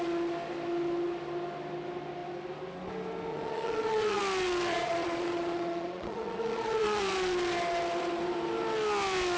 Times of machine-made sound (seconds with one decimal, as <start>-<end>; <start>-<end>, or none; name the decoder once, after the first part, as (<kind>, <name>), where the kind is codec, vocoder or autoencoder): 3.3-4.2 (vocoder, Vocos); 4.7-7.1